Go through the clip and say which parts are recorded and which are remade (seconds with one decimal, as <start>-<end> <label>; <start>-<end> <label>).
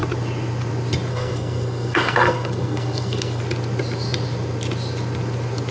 0.0-1.1 recorded; 1.1-3.4 remade; 3.4-5.7 recorded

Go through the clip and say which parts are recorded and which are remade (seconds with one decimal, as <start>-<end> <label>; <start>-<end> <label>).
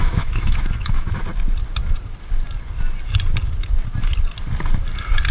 0.0-1.2 remade; 1.2-5.3 recorded